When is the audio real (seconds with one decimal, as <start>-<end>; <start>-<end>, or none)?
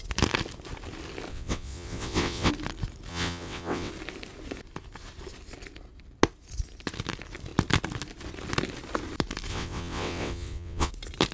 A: 0.0-1.3; 2.5-3.1; 3.9-9.5; 10.9-11.3